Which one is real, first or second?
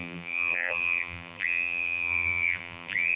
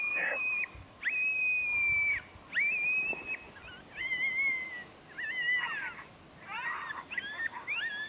second